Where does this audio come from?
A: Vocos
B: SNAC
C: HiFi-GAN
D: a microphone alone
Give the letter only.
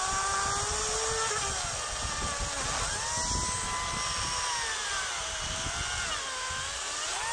D